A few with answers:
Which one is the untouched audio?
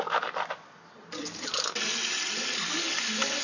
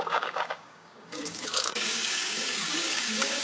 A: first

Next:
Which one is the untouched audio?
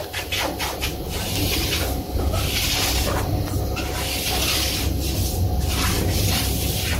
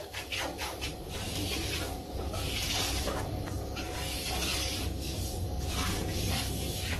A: first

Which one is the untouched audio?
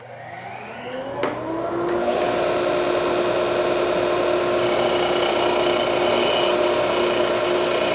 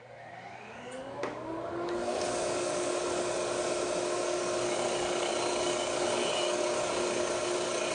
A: first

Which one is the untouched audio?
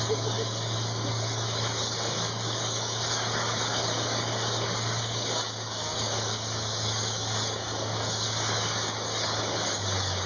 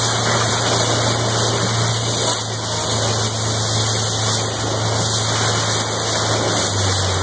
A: second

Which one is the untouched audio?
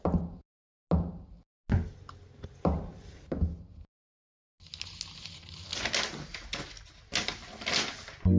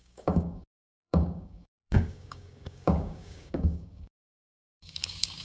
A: first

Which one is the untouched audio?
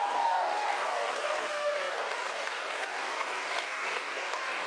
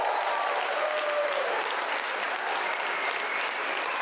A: second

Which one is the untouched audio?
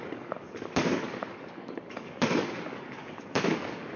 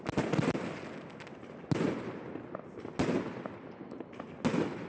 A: second